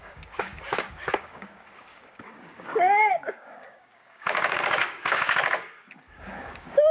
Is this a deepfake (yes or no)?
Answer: yes